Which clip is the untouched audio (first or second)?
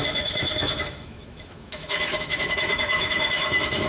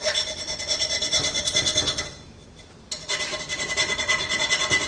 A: second